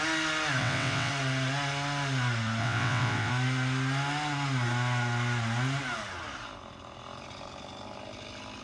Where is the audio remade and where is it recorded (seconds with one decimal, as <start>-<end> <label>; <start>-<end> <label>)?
0.0-0.6 recorded; 0.6-1.1 remade; 1.1-2.6 recorded; 2.6-3.3 remade; 3.3-8.6 recorded

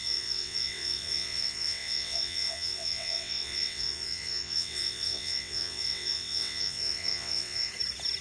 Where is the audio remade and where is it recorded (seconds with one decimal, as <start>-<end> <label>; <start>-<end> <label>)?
0.0-7.7 remade; 7.7-8.2 recorded